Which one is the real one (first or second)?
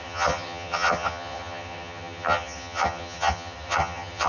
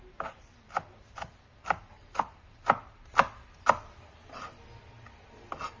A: second